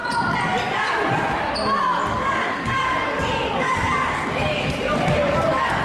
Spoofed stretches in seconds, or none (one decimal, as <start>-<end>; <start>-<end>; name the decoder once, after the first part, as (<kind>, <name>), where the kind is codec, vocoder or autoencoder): 2.1-5.8 (codec, DAC)